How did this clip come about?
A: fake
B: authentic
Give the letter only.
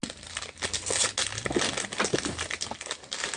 B